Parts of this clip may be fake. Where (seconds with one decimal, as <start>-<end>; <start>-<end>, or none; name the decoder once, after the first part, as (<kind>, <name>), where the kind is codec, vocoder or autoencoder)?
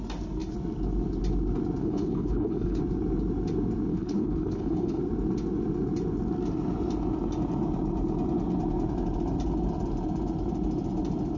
1.8-2.8 (codec, HILCodec); 3.9-5.0